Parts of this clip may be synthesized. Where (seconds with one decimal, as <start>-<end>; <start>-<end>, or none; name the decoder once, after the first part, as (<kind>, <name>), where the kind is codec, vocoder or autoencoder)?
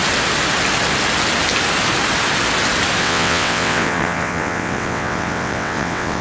3.0-6.2 (vocoder, WaveNeXt)